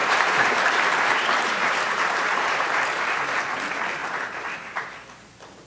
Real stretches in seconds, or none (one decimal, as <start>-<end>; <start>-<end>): 3.4-4.0; 5.0-5.7